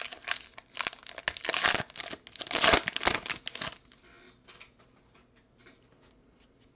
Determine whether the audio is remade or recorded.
recorded